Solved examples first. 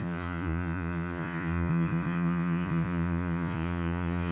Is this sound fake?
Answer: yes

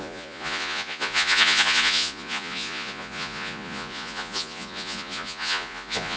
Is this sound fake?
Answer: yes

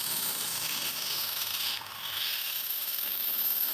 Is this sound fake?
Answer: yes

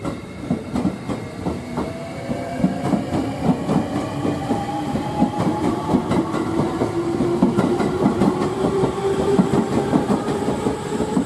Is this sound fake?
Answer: yes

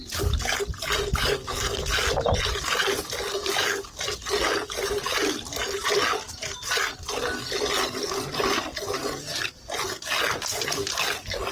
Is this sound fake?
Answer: no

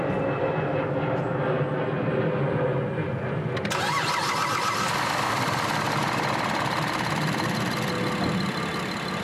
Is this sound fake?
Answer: no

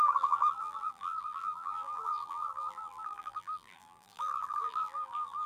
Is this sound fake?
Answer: yes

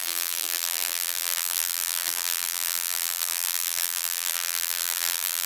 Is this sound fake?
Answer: yes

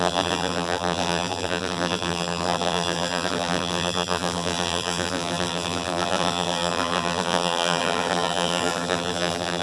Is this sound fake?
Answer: yes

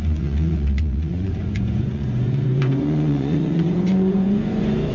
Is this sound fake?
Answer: yes